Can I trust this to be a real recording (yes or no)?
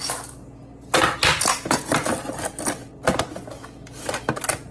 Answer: yes